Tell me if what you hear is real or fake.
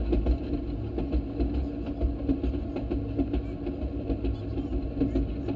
real